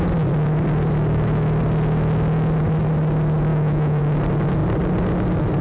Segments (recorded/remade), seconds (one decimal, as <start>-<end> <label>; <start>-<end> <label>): 0.0-3.5 recorded; 3.5-4.0 remade; 4.0-5.6 recorded